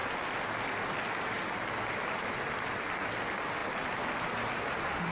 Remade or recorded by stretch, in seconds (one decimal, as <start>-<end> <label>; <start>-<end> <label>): 0.0-5.1 recorded